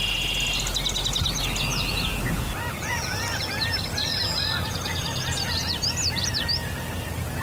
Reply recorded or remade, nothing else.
recorded